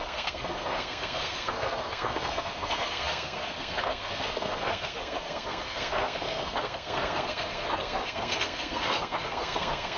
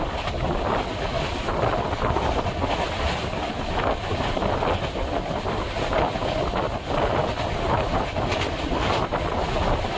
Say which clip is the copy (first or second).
first